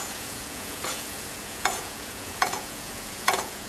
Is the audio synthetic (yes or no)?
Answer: yes